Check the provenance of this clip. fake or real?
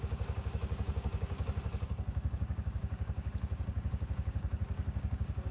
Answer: fake